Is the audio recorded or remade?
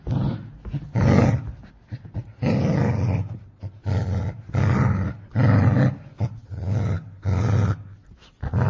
recorded